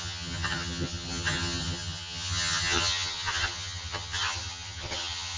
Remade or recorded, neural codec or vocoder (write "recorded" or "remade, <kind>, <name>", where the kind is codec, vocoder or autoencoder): remade, vocoder, HiFi-GAN